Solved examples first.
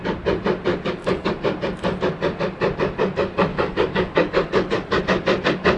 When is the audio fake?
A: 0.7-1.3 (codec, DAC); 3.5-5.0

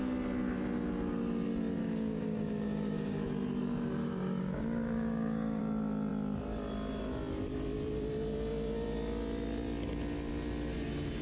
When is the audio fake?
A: 1.8-3.3 (codec, DAC); 4.0-5.6